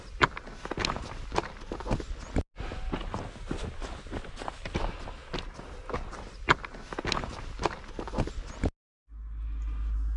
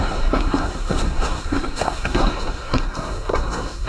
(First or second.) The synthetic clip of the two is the second